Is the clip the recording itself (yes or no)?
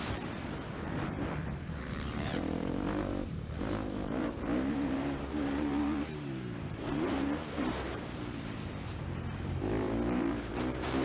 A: no